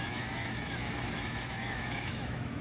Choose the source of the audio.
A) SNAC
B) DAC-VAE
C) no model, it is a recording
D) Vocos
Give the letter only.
B